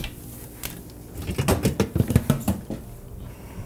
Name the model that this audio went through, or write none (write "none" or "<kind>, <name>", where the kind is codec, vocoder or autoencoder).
none